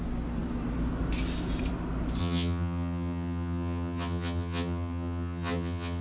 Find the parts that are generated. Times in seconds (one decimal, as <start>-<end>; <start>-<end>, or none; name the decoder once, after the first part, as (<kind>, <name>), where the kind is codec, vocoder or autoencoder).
2.2-6.0 (vocoder, HiFi-GAN)